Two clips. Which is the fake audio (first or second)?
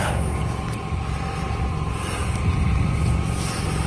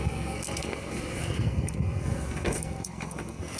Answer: second